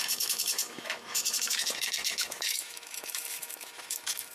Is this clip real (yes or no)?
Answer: no